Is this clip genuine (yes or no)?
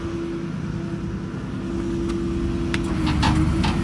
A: yes